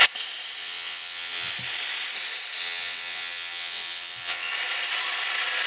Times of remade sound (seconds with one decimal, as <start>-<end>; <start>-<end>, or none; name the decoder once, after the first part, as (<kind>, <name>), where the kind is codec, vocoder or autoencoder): 0.6-1.5 (vocoder, WaveNeXt); 2.6-4.5